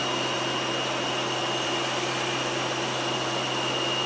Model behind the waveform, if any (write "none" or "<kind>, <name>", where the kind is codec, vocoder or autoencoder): none